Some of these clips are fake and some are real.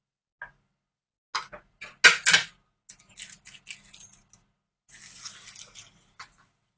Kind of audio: real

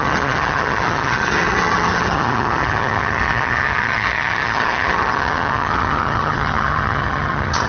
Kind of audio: fake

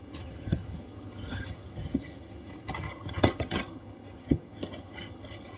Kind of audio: fake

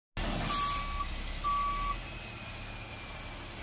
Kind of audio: real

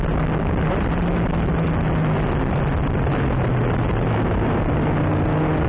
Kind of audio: real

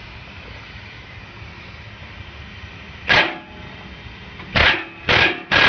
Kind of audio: real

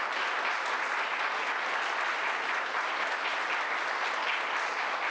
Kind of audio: real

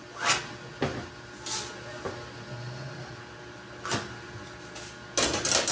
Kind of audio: real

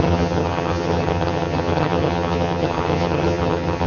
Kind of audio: fake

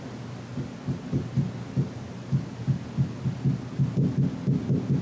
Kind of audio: real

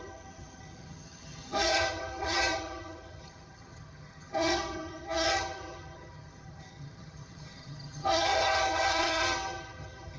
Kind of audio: fake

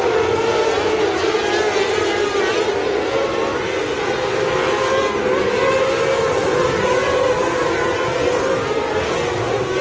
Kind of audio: real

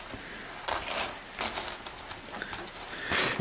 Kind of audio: real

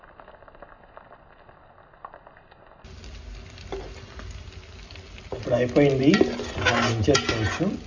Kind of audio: real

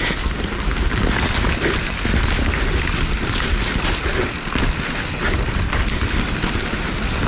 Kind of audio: real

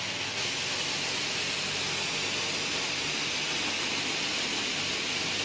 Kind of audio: real